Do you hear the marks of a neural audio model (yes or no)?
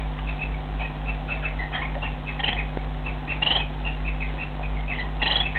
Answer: no